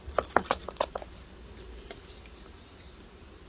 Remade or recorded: recorded